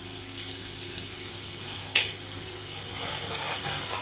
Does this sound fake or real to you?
fake